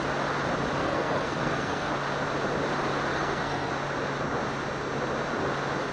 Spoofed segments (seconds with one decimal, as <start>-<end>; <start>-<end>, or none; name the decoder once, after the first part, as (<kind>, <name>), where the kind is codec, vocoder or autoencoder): 0.8-1.9 (codec, SNAC); 3.1-3.7